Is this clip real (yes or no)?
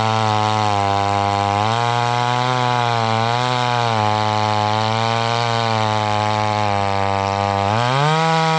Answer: yes